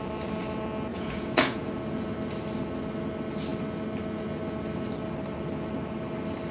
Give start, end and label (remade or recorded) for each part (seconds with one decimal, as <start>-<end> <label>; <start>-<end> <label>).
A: 0.0-0.9 recorded; 0.9-1.7 remade; 1.7-6.5 recorded